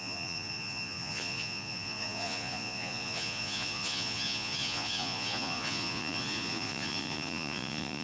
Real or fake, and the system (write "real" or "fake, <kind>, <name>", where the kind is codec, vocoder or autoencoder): fake, vocoder, Vocos